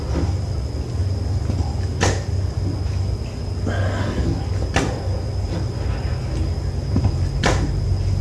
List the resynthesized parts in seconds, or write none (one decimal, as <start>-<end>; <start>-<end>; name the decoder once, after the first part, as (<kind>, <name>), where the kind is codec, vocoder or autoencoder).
none